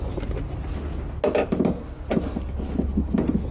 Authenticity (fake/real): real